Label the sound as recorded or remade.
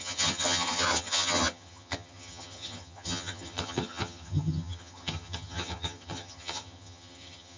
remade